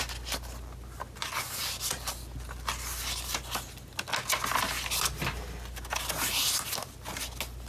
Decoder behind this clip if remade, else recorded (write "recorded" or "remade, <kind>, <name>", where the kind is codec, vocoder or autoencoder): recorded